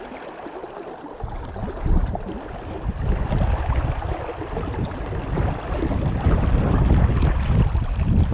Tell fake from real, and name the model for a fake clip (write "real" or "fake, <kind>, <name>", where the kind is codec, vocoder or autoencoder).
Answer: real